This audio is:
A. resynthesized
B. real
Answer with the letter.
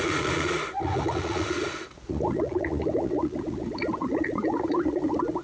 A